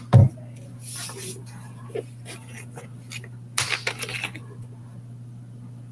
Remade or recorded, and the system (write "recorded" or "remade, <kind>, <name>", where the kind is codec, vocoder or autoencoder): recorded